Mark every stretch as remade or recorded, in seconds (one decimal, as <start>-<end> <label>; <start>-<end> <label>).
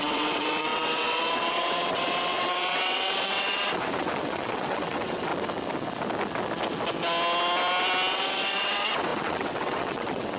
0.0-5.3 remade; 5.3-8.1 recorded; 8.1-10.4 remade